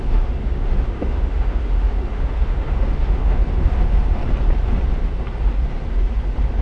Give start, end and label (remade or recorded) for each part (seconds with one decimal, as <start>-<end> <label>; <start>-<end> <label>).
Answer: 0.0-4.2 remade; 4.2-6.6 recorded